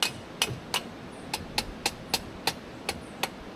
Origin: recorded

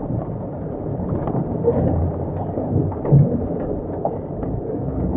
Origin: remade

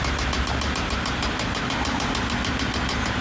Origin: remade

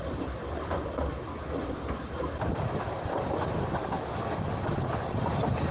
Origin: remade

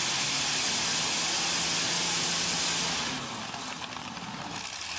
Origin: recorded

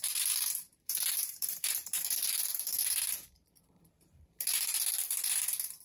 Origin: remade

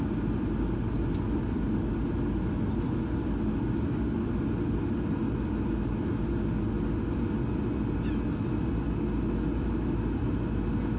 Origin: recorded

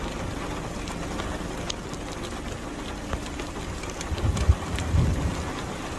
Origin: recorded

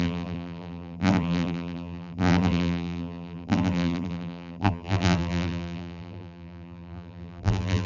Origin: remade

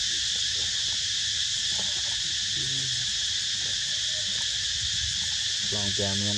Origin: recorded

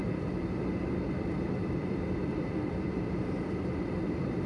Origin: remade